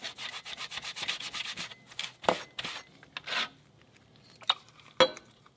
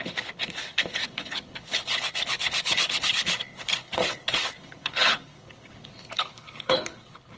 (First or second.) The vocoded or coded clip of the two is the second